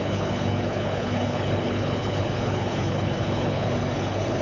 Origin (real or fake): fake